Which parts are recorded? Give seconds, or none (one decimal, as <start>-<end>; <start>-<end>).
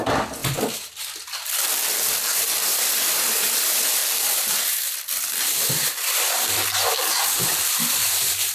0.4-2.5; 4.0-4.6